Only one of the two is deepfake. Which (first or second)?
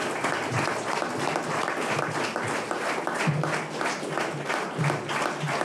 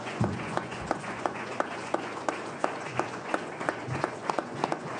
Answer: second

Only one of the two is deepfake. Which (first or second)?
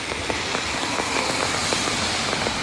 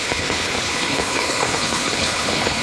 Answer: second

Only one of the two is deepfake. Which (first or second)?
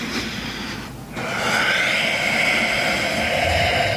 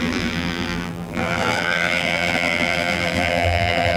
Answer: second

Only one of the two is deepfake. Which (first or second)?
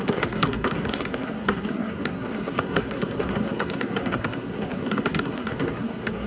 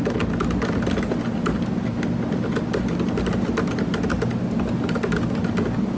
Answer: first